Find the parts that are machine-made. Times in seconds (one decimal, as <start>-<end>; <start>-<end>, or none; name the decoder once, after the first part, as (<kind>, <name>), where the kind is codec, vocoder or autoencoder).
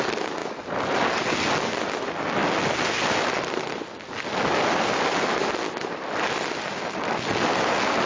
none